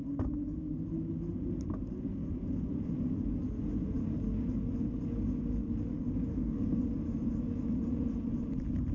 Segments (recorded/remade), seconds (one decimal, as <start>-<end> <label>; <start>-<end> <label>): 0.0-6.3 recorded; 6.3-6.8 remade; 6.8-8.9 recorded